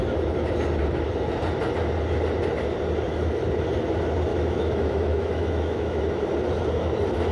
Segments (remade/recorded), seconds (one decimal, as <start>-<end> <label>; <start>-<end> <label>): 0.0-4.3 recorded; 4.3-6.0 remade; 6.0-7.3 recorded